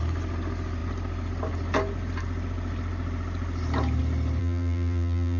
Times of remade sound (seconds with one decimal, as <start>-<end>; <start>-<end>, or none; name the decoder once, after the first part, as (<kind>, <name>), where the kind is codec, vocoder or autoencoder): 4.4-5.4 (vocoder, BigVGAN v2)

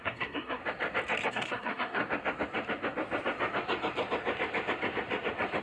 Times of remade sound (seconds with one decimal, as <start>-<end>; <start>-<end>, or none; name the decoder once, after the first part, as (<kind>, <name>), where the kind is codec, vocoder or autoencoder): 0.0-0.6 (codec, SNAC); 1.3-2.0

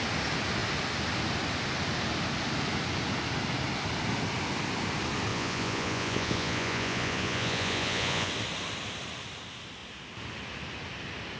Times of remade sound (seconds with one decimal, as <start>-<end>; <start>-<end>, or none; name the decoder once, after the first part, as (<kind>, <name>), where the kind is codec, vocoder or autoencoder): 5.3-8.3 (vocoder, Vocos)

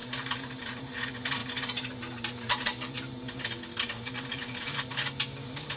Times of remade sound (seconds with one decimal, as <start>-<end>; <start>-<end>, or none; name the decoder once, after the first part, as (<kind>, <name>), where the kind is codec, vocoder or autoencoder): 0.0-0.9 (vocoder, BigVGAN v2)

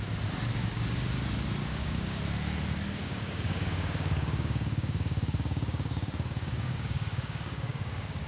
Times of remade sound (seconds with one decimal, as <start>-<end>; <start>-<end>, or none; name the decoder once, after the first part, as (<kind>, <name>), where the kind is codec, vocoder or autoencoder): 1.7-2.2 (codec, DAC); 3.0-8.3